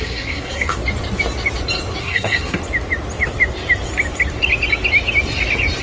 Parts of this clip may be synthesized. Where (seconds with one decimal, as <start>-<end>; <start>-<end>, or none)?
0.0-0.8; 2.0-2.6